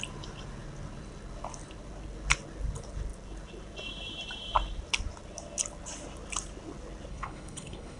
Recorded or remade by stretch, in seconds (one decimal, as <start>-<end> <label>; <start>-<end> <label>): 0.0-7.1 recorded; 7.1-8.0 remade